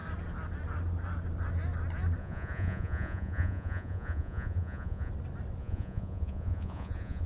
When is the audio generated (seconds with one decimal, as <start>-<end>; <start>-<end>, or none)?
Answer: 2.2-5.1; 5.6-7.3